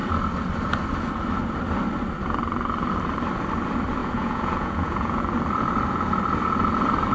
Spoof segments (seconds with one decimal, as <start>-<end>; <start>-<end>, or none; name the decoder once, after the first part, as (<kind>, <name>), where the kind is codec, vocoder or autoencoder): 4.0-5.2 (vocoder, Vocos)